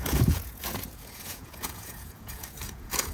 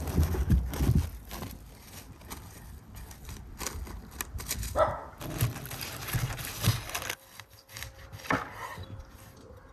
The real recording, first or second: second